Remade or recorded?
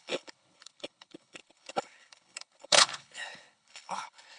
remade